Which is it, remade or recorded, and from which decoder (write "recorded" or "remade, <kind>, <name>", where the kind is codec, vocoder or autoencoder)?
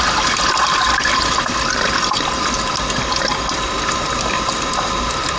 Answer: recorded